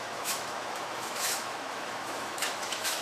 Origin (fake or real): fake